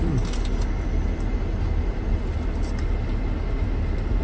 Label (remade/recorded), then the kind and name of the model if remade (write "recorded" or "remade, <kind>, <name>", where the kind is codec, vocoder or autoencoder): recorded